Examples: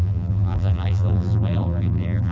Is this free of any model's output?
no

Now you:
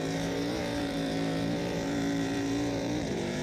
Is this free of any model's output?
no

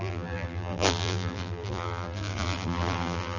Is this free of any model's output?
no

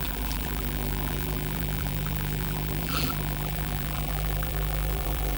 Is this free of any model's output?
no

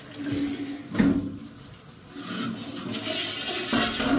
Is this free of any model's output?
yes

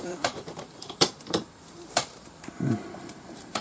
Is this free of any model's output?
no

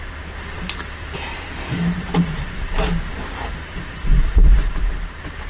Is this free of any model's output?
no